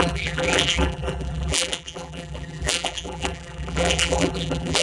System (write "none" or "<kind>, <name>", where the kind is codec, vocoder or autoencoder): vocoder, BigVGAN v2